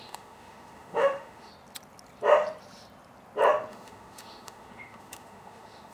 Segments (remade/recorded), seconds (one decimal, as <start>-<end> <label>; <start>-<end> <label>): 0.0-1.5 remade; 1.5-3.7 recorded; 3.7-5.9 remade